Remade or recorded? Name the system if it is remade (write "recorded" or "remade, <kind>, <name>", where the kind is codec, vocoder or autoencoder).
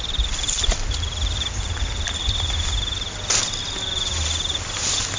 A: recorded